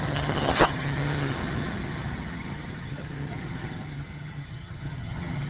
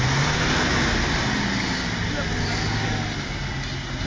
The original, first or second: second